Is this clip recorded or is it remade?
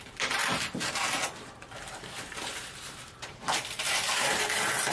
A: remade